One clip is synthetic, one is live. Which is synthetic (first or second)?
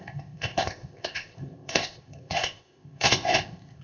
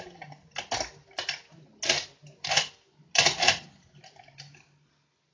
first